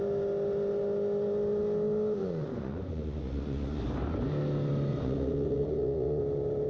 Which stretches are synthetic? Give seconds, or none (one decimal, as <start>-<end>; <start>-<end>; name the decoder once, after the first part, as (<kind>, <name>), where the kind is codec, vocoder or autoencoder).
2.2-3.8 (vocoder, Vocos); 4.9-6.2